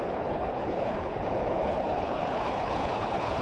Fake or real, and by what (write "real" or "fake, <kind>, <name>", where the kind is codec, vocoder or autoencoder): fake, codec, HILCodec